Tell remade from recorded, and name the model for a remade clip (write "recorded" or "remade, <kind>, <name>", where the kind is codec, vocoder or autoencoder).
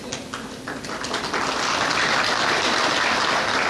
recorded